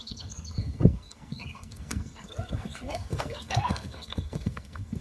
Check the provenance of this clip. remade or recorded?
remade